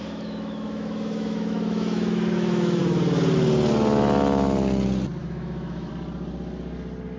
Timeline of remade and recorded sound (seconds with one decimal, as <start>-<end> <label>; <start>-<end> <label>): 0.0-2.8 remade; 2.8-5.2 recorded; 5.2-5.9 remade; 5.9-7.2 recorded